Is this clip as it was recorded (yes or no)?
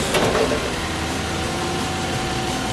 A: no